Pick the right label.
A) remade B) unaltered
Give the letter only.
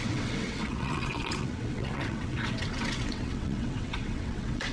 A